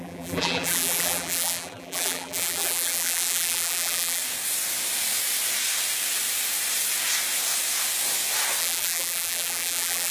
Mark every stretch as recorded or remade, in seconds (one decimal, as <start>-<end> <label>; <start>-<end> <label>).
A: 0.0-4.2 remade; 4.2-8.6 recorded; 8.6-10.1 remade